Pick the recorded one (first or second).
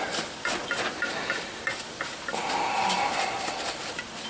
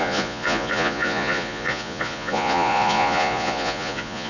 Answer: first